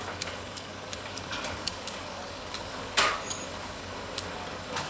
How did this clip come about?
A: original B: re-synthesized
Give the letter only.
B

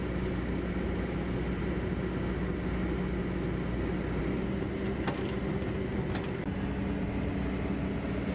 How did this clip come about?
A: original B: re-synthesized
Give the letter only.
A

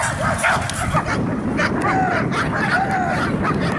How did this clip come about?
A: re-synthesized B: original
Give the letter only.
B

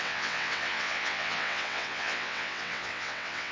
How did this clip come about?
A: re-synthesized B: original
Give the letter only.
A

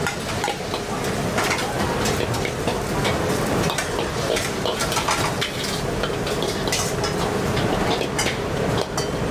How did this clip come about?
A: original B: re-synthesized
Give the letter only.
A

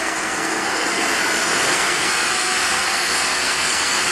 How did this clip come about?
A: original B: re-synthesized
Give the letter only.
B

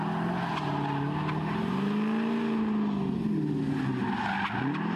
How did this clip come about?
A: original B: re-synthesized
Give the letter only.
A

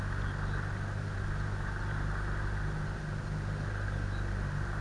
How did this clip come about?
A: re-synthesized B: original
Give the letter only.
B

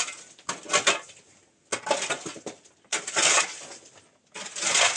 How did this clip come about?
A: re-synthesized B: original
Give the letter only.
B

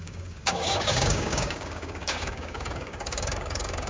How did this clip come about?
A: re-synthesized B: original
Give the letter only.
A